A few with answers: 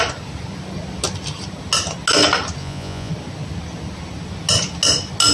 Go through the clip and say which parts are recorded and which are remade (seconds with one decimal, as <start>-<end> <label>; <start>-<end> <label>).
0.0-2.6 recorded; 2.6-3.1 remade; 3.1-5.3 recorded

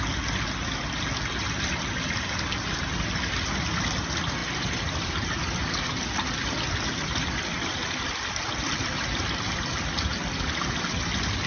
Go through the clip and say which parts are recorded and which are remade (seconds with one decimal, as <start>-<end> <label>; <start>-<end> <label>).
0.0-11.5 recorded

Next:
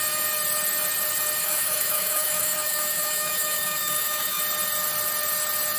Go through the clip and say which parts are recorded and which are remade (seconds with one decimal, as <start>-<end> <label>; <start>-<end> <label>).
0.0-1.4 recorded; 1.4-4.4 remade; 4.4-5.8 recorded

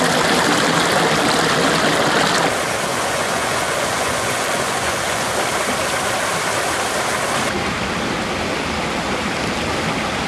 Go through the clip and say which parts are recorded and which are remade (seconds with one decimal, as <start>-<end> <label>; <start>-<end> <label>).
0.0-2.9 recorded; 2.9-5.3 remade; 5.3-10.3 recorded